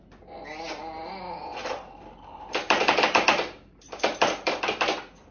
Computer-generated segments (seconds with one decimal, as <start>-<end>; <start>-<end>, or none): 1.5-4.0